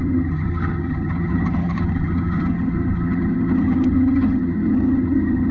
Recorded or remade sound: remade